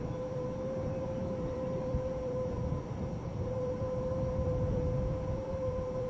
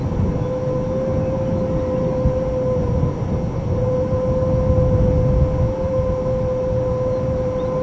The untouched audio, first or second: second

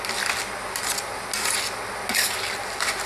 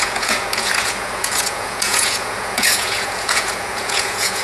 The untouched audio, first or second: first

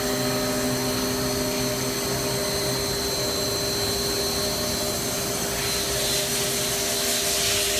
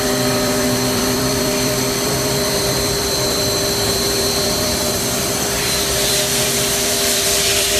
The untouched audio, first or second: first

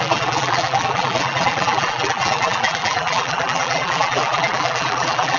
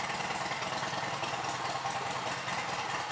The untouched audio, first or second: second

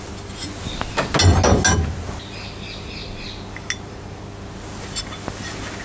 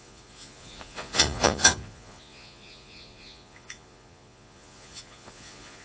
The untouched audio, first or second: first